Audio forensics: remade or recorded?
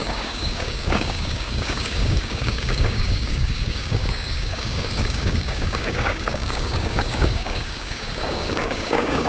remade